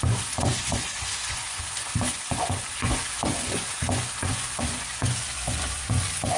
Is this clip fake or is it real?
fake